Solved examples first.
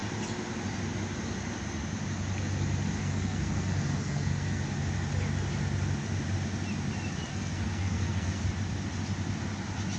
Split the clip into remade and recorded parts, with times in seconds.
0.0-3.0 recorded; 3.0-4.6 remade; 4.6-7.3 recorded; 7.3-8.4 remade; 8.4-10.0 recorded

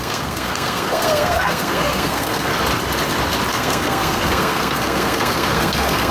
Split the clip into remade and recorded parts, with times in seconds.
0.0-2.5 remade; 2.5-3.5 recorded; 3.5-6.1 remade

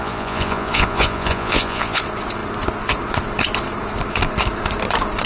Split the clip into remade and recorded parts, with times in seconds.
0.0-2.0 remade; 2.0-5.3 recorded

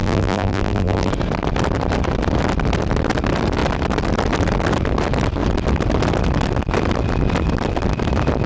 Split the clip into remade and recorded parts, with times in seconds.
0.0-1.1 remade; 1.1-8.5 recorded

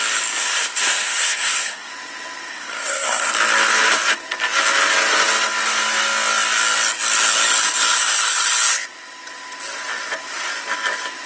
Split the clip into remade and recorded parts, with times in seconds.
0.0-0.4 recorded; 0.4-1.9 remade; 1.9-2.5 recorded; 2.5-3.3 remade; 3.3-11.3 recorded

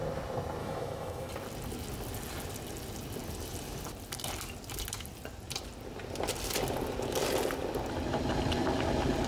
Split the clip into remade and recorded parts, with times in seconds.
0.0-0.6 recorded; 0.6-1.3 remade; 1.3-9.3 recorded